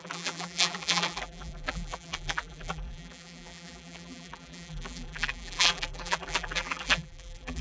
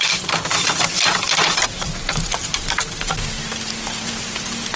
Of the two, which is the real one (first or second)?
second